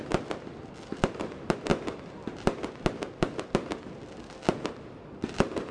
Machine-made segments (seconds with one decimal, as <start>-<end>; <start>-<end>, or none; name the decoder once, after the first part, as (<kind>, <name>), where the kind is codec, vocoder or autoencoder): none